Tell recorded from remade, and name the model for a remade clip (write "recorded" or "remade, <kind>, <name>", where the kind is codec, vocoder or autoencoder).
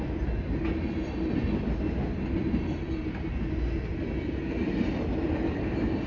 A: recorded